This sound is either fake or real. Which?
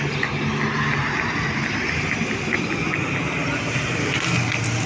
real